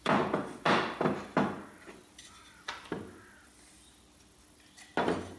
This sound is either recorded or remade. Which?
recorded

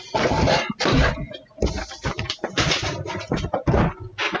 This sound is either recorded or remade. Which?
remade